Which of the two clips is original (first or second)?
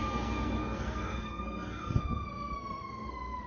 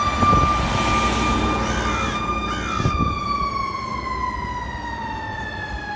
second